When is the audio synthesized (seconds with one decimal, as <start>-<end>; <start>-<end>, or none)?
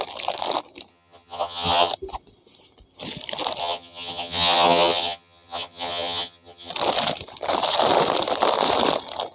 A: 0.9-1.9; 3.6-6.7